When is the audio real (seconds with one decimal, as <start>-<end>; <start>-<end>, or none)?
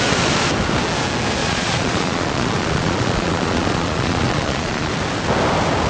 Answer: 0.0-1.4; 4.9-5.9